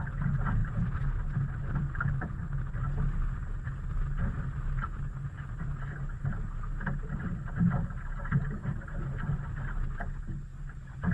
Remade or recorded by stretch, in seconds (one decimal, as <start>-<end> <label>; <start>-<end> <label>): 0.0-11.1 recorded

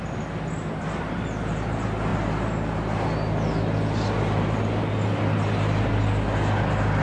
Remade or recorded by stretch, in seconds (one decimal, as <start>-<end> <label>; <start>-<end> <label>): 0.0-7.0 recorded

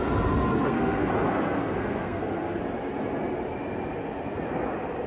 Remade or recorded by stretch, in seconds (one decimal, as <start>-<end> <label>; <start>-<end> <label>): 0.0-0.5 recorded; 0.5-1.1 remade; 1.1-1.6 recorded; 1.6-2.6 remade; 2.6-5.1 recorded

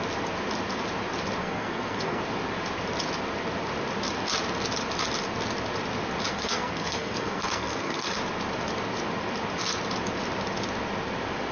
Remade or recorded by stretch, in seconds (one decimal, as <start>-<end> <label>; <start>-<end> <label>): 0.0-1.4 recorded; 1.4-2.2 remade; 2.2-6.3 recorded; 6.3-8.2 remade; 8.2-11.5 recorded

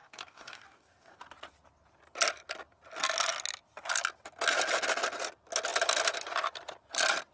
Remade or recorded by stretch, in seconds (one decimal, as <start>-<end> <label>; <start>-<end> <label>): 0.0-1.2 remade; 1.2-7.3 recorded

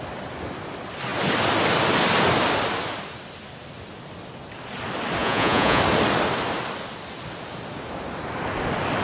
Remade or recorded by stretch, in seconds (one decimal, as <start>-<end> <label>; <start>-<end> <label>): 0.0-5.2 recorded; 5.2-5.8 remade; 5.8-9.0 recorded

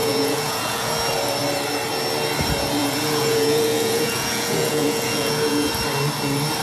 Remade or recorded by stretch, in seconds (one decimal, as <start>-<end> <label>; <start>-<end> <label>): 0.0-0.9 remade; 0.9-2.8 recorded; 2.8-5.7 remade; 5.7-6.6 recorded

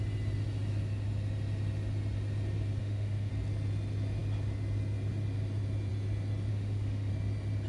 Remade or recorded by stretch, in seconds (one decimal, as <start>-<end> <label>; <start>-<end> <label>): 0.0-2.8 recorded; 2.8-3.3 remade; 3.3-6.5 recorded; 6.5-7.1 remade; 7.1-7.7 recorded